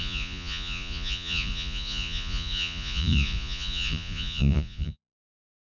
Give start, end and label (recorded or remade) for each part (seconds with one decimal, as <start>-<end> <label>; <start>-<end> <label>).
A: 0.0-5.6 remade